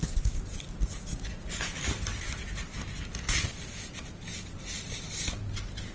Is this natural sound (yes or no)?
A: yes